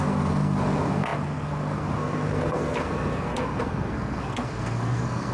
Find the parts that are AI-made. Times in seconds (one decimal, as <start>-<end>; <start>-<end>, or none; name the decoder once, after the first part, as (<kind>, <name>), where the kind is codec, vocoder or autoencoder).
0.0-5.3 (codec, SNAC)